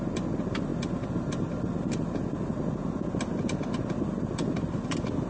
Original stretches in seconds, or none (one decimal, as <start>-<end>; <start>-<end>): 0.0-5.3